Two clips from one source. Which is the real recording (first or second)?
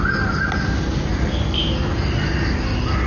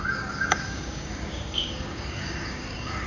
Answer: first